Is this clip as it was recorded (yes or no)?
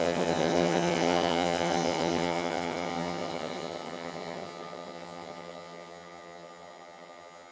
no